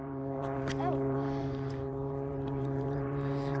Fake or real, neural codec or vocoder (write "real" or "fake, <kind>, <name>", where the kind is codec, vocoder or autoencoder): fake, vocoder, BigVGAN v2